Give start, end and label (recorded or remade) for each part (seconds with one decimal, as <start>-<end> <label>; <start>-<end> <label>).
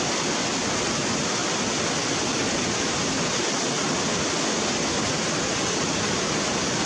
0.0-6.9 recorded